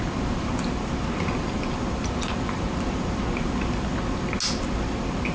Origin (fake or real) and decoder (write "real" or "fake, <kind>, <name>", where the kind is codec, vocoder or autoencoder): real